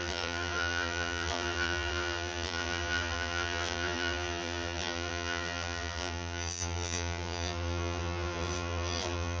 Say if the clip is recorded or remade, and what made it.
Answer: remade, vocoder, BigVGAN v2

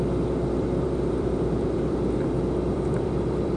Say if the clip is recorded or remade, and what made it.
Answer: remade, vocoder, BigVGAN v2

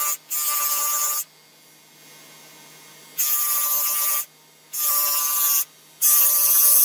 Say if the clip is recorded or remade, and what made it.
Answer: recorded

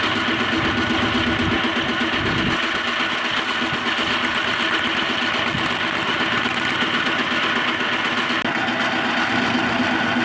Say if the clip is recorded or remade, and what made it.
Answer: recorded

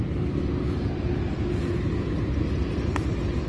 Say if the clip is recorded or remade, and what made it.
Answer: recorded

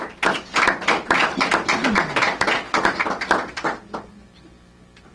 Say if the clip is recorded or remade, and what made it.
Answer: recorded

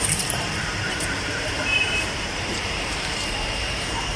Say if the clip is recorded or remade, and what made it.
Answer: remade, vocoder, BigVGAN v2